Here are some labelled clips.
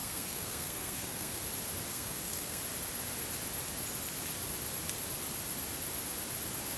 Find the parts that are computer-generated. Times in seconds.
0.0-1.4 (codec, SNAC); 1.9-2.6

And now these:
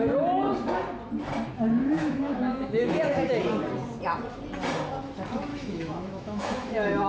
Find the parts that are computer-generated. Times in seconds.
1.8-3.4 (autoencoder, DAC-VAE); 5.5-7.1

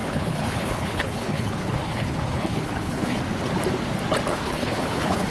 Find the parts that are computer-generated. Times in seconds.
0.0-3.2 (codec, HILCodec); 4.3-5.3

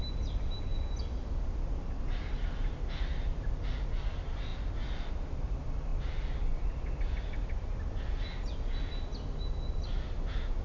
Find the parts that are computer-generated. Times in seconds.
none

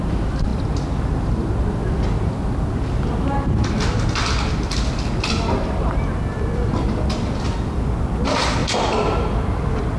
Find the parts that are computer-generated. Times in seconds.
none

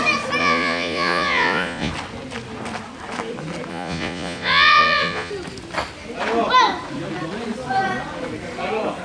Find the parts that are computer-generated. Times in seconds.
0.4-1.9 (vocoder, Vocos); 3.7-5.3

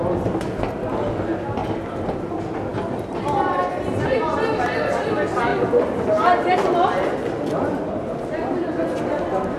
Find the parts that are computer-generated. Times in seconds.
none